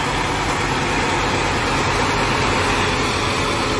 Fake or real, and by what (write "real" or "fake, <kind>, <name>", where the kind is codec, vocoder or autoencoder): real